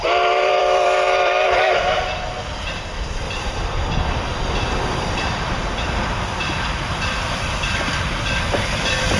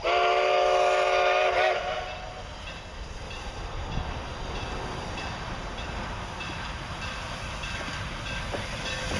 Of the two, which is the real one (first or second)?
second